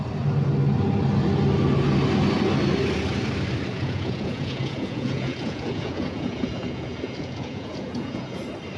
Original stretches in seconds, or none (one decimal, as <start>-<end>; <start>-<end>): 0.0-3.7; 8.4-8.8